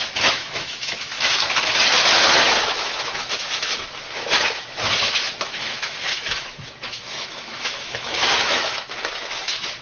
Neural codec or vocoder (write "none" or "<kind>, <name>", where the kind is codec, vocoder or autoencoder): autoencoder, DAC-VAE